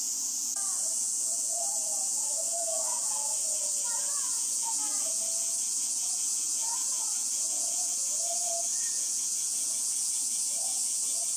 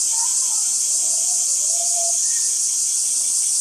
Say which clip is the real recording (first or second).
second